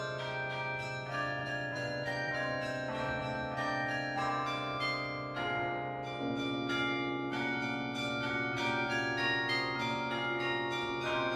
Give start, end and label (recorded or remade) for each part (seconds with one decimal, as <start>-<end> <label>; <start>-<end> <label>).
0.0-1.4 recorded; 1.4-2.3 remade; 2.3-11.4 recorded